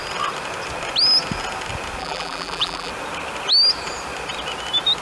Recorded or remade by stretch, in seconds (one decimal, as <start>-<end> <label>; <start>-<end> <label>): 0.0-2.0 recorded; 2.0-2.9 remade; 2.9-5.0 recorded

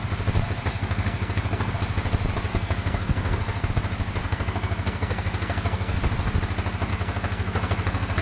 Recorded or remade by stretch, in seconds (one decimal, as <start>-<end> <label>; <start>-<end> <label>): 0.0-0.7 recorded; 0.7-1.7 remade; 1.7-2.5 recorded; 2.5-3.7 remade; 3.7-4.2 recorded; 4.2-6.0 remade; 6.0-6.9 recorded; 6.9-8.2 remade

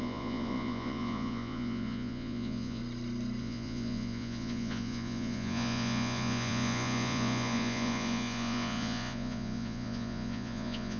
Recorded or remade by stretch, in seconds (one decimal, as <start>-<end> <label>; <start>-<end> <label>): 0.0-2.8 remade; 2.8-3.4 recorded; 3.4-11.0 remade

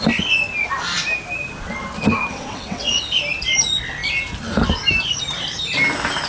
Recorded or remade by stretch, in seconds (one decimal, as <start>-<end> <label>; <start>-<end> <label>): 0.0-2.3 recorded; 2.3-3.0 remade; 3.0-6.3 recorded

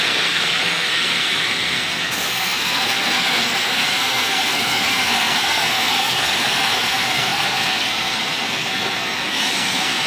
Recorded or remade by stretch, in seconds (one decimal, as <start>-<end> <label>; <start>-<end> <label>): 0.0-10.1 remade

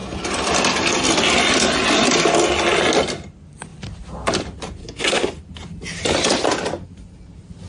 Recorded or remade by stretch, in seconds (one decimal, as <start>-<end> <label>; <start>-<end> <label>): 0.0-4.8 recorded; 4.8-5.3 remade; 5.3-7.7 recorded